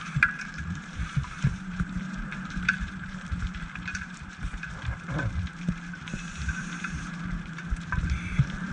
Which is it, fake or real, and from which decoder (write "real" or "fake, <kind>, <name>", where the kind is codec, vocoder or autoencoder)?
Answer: fake, vocoder, BigVGAN v2